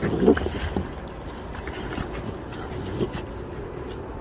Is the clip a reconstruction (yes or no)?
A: no